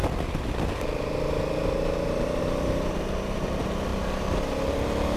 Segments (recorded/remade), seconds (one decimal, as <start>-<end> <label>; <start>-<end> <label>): 0.0-5.2 remade